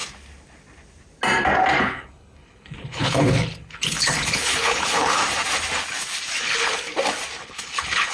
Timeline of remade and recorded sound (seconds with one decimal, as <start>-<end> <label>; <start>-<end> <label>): 0.0-1.8 recorded; 1.8-5.2 remade; 5.2-6.4 recorded; 6.4-6.9 remade; 6.9-7.4 recorded; 7.4-8.1 remade